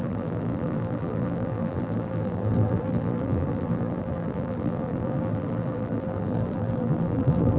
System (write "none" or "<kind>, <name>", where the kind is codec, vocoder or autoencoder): vocoder, BigVGAN v2